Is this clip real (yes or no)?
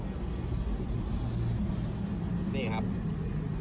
yes